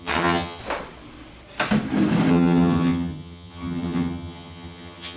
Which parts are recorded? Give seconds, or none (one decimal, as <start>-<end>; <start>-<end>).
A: 0.6-2.3